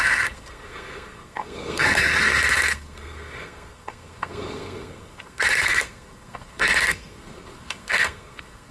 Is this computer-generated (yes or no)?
yes